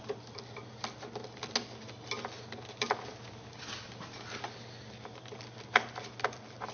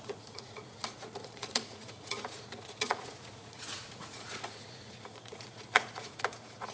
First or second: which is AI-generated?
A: second